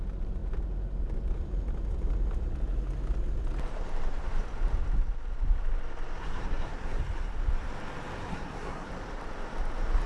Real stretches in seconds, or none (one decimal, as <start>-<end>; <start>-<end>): 0.0-6.2; 7.0-8.3; 8.9-10.1